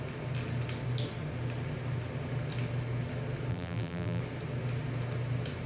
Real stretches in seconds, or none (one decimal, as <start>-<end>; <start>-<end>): 0.0-3.5; 4.2-5.7